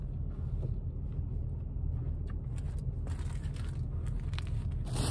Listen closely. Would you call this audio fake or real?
real